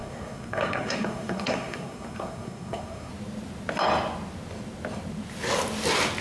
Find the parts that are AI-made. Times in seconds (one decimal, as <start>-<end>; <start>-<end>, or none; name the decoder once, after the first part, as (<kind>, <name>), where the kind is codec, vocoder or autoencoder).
0.0-3.1 (codec, SNAC)